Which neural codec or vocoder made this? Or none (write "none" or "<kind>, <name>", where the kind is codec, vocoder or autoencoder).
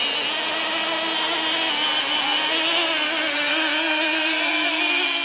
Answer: none